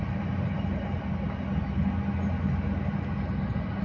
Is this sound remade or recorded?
recorded